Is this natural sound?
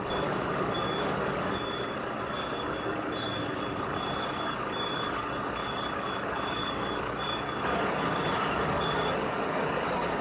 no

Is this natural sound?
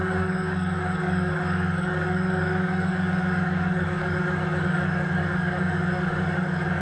no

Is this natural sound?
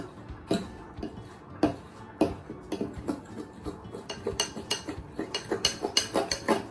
yes